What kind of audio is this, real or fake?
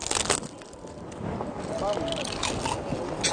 real